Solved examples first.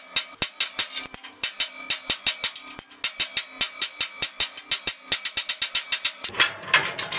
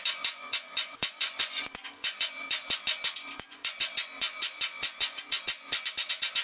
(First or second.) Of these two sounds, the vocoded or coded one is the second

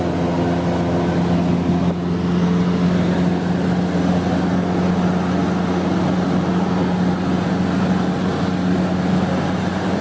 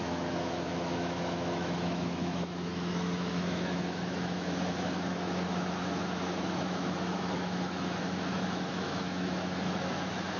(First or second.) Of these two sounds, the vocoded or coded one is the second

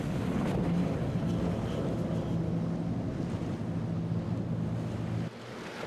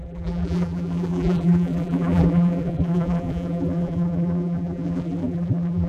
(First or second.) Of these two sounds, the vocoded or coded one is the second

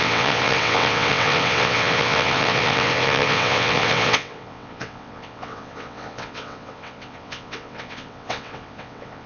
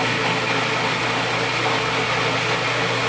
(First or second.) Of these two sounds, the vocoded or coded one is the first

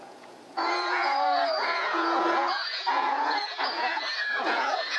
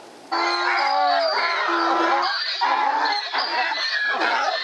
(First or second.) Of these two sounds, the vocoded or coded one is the first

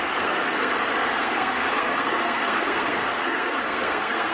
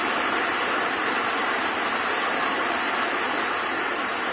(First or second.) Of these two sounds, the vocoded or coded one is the first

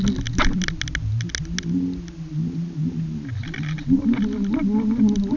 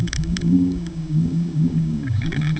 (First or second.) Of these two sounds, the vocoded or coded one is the second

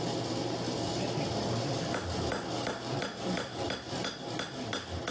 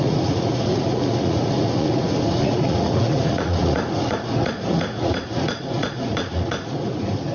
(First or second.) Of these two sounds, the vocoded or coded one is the second